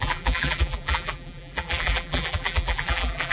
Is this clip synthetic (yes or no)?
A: yes